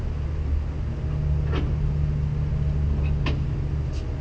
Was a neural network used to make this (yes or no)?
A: no